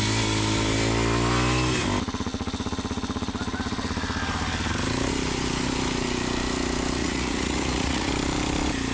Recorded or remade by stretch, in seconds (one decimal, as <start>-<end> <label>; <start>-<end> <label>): 0.0-7.0 recorded; 7.0-8.1 remade; 8.1-8.9 recorded